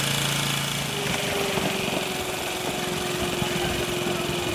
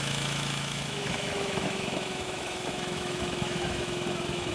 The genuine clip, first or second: first